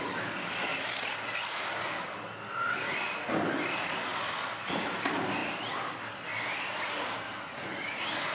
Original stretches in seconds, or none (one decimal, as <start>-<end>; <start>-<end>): 0.0-8.3